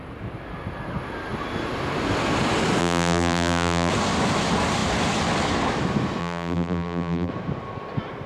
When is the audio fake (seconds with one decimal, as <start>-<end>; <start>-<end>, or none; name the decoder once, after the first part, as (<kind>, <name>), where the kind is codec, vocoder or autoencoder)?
2.8-3.9 (vocoder, BigVGAN v2); 6.2-7.3